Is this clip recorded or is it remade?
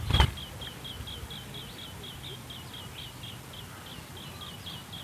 recorded